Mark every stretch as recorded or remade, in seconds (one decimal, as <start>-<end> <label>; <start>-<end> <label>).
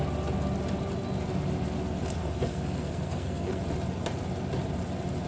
0.0-2.2 recorded; 2.2-3.6 remade; 3.6-5.3 recorded